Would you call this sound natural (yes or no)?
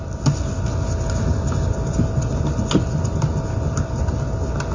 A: yes